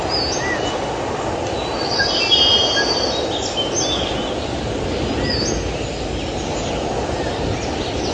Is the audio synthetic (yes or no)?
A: no